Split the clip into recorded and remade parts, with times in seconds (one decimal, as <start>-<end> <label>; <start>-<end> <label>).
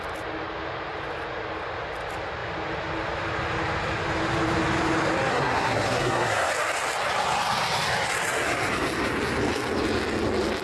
0.0-5.3 recorded; 5.3-6.5 remade; 6.5-10.6 recorded